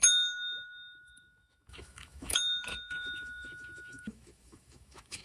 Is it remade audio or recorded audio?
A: remade